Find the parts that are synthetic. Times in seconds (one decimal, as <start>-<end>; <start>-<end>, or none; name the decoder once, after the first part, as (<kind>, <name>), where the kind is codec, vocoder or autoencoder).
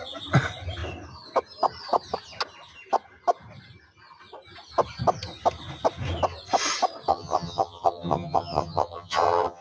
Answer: 7.1-9.6 (vocoder, HiFi-GAN)